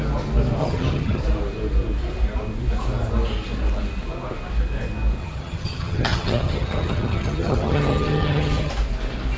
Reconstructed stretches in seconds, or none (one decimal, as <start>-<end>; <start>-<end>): 0.6-1.2; 5.2-8.7